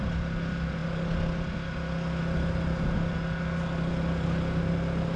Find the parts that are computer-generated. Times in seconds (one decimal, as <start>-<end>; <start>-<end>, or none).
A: none

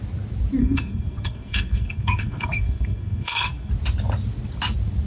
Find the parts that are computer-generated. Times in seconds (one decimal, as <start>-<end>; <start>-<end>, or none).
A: 0.6-3.7

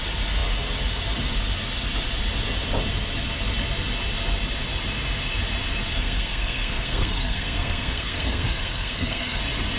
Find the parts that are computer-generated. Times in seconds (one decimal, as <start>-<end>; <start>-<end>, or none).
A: 5.9-9.4

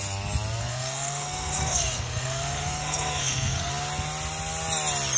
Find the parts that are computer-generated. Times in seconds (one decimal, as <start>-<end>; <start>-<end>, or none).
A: 0.6-3.7

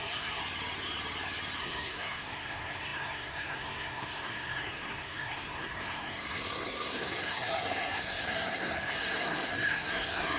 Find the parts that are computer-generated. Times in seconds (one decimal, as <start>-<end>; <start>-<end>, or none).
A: 0.0-0.4; 1.6-10.4